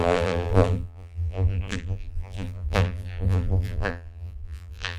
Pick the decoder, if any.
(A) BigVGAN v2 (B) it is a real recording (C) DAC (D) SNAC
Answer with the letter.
A